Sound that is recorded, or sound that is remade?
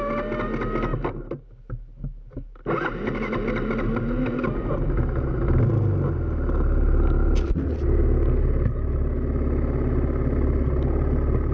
recorded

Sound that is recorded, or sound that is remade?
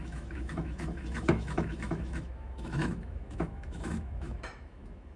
remade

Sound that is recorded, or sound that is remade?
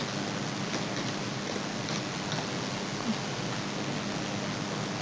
recorded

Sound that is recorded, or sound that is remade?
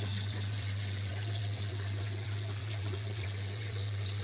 remade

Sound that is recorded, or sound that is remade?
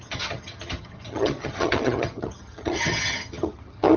remade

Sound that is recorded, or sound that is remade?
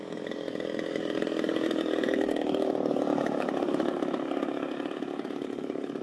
remade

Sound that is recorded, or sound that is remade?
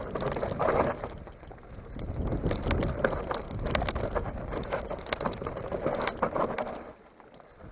recorded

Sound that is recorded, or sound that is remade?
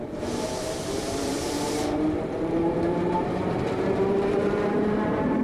remade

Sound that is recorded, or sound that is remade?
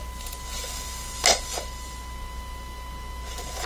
recorded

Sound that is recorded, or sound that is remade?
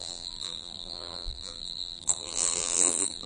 remade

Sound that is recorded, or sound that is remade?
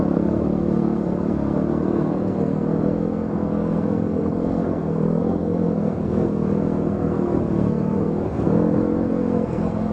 remade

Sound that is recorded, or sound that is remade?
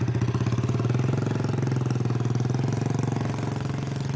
recorded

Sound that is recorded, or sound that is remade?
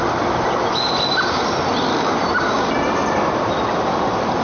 recorded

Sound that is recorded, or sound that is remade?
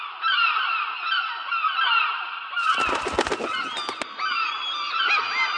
recorded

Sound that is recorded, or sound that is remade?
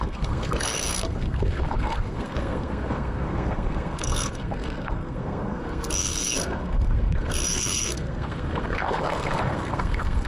remade